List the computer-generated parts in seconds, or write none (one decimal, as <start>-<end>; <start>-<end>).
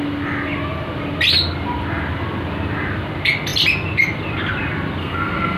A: 5.0-5.6